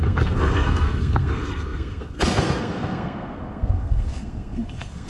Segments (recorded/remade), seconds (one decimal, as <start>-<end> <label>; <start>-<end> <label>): 0.0-5.1 remade